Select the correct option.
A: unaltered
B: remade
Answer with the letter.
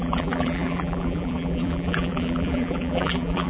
B